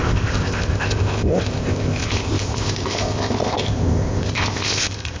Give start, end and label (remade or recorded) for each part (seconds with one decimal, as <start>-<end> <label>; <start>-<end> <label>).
0.0-5.2 remade